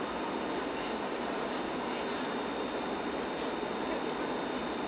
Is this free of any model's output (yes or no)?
yes